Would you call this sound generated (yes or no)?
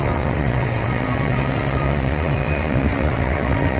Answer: yes